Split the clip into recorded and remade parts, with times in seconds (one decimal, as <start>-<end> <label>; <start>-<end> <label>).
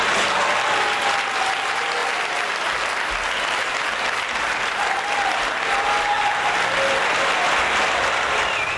0.0-8.8 recorded